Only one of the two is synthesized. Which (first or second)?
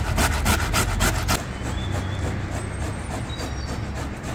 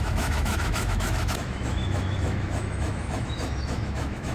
second